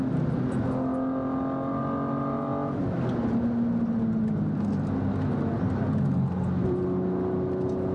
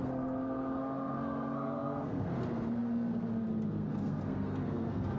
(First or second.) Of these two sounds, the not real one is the second